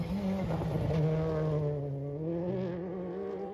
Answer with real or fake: real